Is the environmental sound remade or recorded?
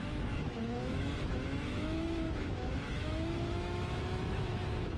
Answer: remade